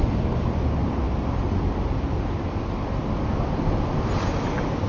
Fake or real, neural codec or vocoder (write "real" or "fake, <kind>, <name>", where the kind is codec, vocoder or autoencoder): real